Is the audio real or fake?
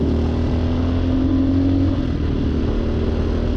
real